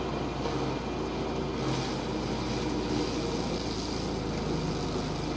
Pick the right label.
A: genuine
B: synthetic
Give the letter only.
A